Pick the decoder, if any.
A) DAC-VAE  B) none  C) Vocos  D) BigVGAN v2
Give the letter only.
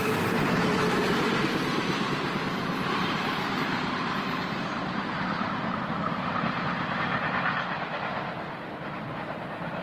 D